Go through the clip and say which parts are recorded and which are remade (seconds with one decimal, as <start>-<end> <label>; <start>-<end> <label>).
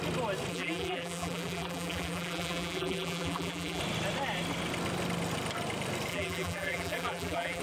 0.0-0.5 recorded; 0.5-3.8 remade; 3.8-6.1 recorded; 6.1-7.6 remade